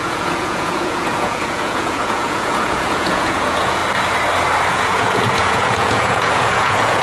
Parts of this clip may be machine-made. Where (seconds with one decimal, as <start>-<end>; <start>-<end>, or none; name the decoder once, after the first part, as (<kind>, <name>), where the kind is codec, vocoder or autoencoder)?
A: 0.0-3.8 (vocoder, Vocos); 4.7-7.0